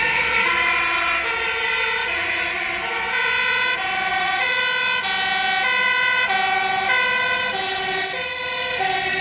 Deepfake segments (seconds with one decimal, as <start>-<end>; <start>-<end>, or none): 2.0-2.6; 4.1-4.6